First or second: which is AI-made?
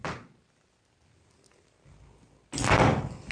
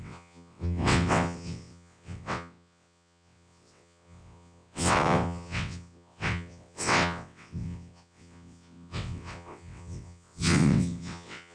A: second